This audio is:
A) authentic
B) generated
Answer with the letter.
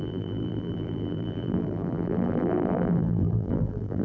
B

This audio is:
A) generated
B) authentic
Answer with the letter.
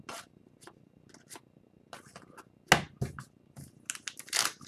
B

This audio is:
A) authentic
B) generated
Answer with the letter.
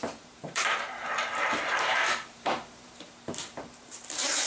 B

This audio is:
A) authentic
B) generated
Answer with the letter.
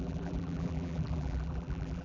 B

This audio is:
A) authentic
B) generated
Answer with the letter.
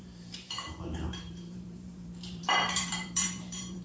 B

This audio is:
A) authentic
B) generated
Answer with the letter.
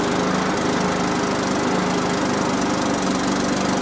A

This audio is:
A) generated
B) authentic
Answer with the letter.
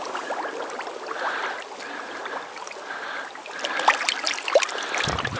B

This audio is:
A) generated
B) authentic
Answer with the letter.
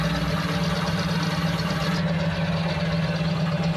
B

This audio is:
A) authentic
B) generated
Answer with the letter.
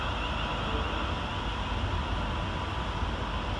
A